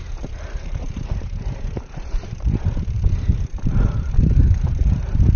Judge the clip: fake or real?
fake